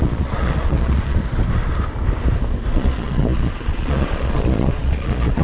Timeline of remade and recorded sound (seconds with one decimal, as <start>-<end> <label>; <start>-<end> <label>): 0.0-1.2 remade; 1.2-2.7 recorded; 2.7-5.4 remade